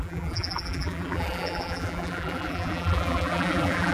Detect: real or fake fake